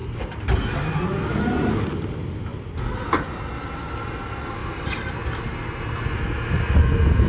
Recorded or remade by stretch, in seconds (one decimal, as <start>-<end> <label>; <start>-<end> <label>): 0.0-1.0 remade; 1.0-4.6 recorded; 4.6-5.1 remade; 5.1-7.3 recorded